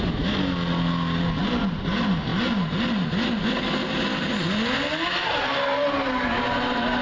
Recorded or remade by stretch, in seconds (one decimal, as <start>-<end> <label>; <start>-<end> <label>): 0.0-7.0 recorded